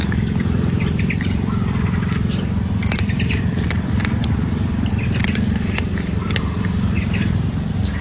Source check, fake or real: fake